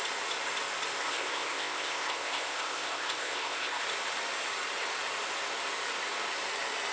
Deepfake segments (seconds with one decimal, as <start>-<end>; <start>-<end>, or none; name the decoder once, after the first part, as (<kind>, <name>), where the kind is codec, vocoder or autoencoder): 1.0-3.8 (codec, ZipCodec)